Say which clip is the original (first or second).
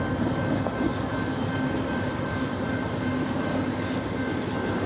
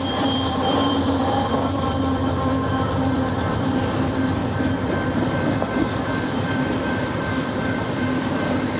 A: first